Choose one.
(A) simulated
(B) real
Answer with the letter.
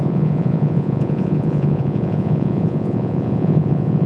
A